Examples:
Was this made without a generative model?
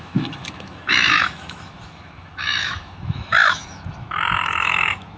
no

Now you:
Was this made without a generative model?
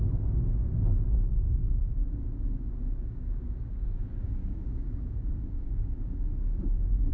no